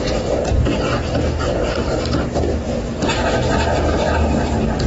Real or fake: real